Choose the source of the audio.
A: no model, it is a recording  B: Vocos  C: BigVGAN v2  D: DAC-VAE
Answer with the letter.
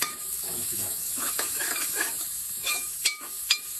D